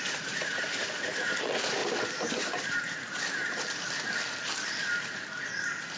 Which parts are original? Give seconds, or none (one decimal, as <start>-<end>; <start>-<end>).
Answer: 1.8-2.7; 3.4-6.0